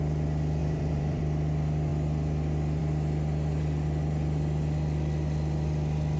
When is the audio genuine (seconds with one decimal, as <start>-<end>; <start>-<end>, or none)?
0.0-0.6; 1.2-6.2